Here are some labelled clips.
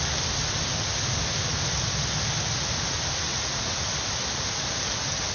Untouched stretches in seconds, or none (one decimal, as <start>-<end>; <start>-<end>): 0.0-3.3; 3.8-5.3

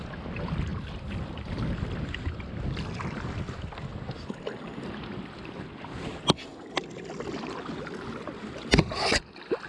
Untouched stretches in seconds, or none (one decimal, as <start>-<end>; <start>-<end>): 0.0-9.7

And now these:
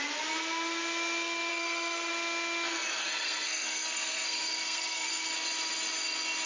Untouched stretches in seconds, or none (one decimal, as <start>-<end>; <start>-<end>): 0.0-1.5; 2.1-3.0; 5.3-6.5

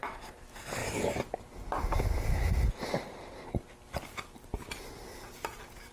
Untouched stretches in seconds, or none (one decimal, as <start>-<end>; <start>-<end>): 0.0-5.9

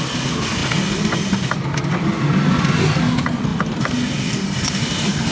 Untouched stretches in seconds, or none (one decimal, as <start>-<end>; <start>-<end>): 0.0-5.3